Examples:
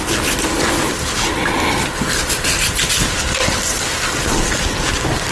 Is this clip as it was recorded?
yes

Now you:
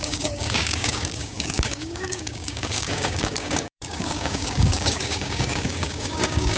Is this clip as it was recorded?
no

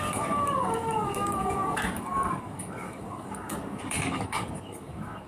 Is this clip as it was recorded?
no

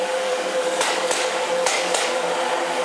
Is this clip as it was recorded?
no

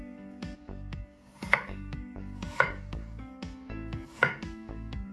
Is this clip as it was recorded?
no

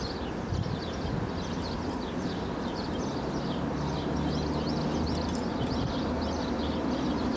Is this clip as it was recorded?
yes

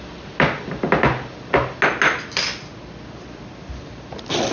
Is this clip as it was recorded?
yes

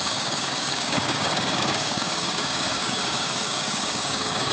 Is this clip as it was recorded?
no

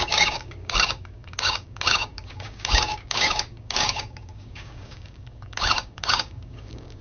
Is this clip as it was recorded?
no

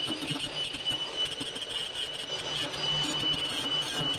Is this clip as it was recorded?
yes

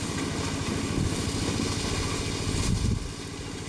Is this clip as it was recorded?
yes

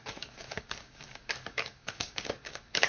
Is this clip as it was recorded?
no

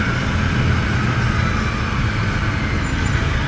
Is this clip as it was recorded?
yes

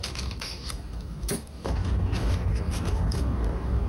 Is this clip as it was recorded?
no